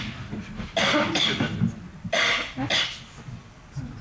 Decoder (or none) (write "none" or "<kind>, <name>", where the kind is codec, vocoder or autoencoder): none